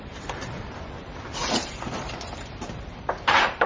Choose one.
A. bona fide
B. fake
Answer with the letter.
B